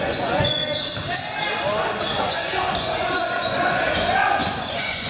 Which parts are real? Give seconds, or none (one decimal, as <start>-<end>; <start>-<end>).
0.6-2.2